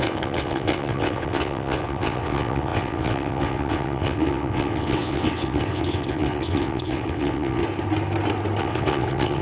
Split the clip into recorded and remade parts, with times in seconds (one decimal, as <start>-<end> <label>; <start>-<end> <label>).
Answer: 0.0-7.6 remade; 7.6-8.6 recorded; 8.6-9.4 remade